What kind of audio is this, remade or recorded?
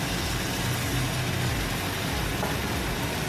recorded